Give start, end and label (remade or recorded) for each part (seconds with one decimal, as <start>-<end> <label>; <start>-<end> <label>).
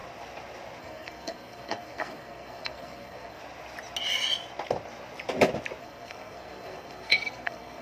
0.0-0.8 recorded; 0.8-3.4 remade; 3.4-5.8 recorded; 5.8-7.8 remade